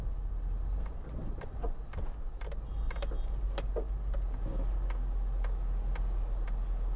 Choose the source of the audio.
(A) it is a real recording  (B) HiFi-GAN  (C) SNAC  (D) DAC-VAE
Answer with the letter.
A